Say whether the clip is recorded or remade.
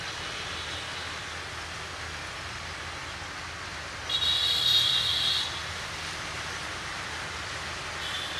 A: recorded